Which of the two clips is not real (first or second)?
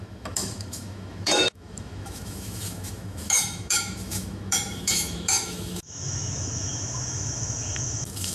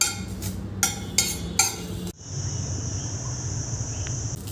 first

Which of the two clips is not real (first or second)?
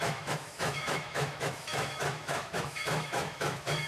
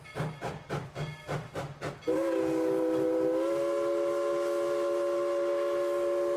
first